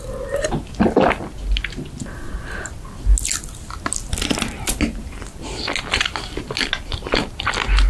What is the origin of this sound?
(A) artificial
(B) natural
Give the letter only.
B